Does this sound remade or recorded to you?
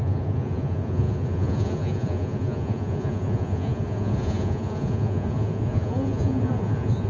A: remade